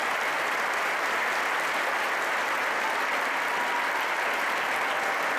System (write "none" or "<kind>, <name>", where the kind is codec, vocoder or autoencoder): none